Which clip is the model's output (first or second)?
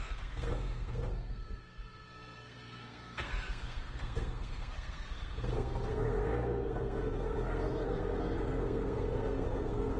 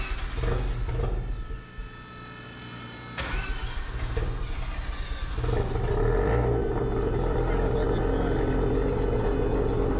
first